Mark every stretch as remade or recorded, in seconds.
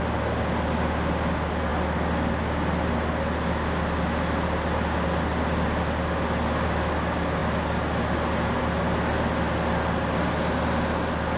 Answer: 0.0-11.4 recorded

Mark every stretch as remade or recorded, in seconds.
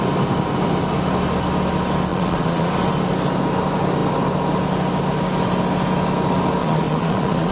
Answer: 0.0-2.1 recorded; 2.1-2.7 remade; 2.7-6.6 recorded; 6.6-7.5 remade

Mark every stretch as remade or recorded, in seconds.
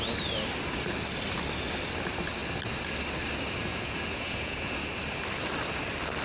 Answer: 0.0-3.7 recorded; 3.7-4.8 remade; 4.8-6.2 recorded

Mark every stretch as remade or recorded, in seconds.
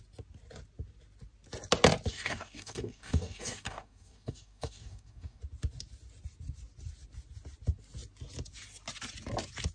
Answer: 0.0-2.1 recorded; 2.1-5.4 remade; 5.4-9.7 recorded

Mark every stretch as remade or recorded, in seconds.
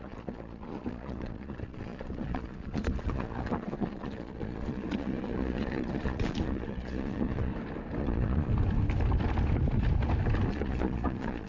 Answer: 0.0-7.5 remade; 7.5-8.0 recorded; 8.0-8.5 remade; 8.5-10.5 recorded; 10.5-11.5 remade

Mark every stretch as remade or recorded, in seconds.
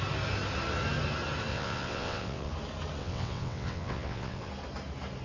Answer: 0.0-1.5 recorded; 1.5-2.5 remade; 2.5-3.0 recorded; 3.0-4.5 remade; 4.5-5.2 recorded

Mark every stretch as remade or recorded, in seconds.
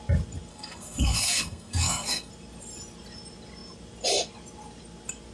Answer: 0.0-0.5 recorded; 0.5-2.3 remade; 2.3-5.3 recorded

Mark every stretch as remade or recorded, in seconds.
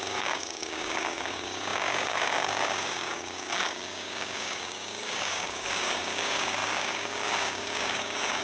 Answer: 0.0-8.4 remade